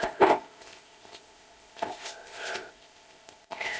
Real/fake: fake